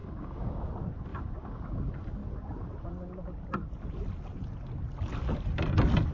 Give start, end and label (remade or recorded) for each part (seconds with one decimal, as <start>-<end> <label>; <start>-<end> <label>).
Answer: 0.0-0.7 remade; 0.7-1.1 recorded; 1.1-1.6 remade; 1.6-6.1 recorded